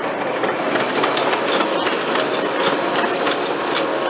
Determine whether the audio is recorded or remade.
recorded